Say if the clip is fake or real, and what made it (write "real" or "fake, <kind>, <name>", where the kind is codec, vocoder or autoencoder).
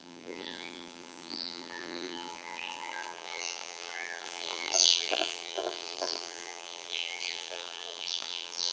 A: fake, vocoder, BigVGAN v2